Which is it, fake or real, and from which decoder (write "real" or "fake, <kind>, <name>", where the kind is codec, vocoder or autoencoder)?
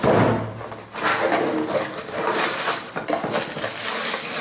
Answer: real